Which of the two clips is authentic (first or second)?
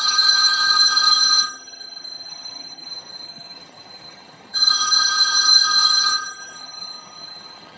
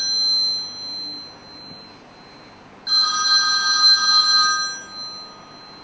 second